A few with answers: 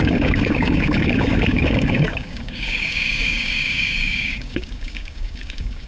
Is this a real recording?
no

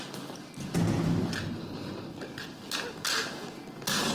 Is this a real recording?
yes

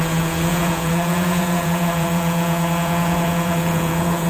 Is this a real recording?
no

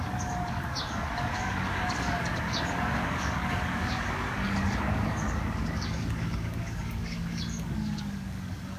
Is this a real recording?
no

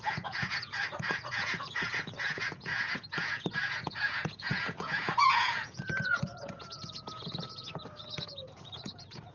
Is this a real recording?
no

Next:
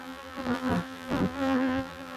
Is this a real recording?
no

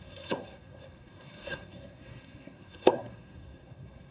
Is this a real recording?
no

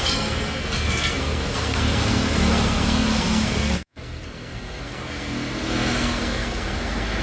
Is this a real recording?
no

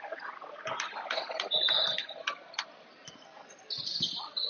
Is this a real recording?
yes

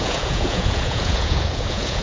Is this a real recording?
no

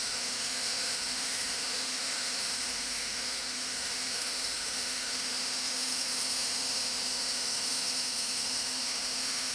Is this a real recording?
no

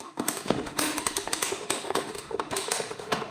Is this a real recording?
no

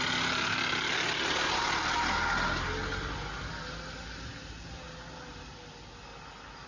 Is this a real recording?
yes